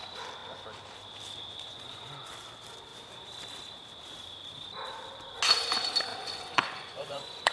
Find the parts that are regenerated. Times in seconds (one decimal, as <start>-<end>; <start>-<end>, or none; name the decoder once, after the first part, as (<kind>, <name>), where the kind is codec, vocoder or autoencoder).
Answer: 1.7-2.3 (vocoder, Vocos); 6.1-7.5